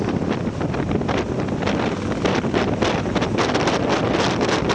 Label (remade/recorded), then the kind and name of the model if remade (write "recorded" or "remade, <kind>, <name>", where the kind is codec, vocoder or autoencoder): recorded